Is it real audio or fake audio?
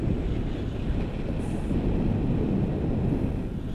real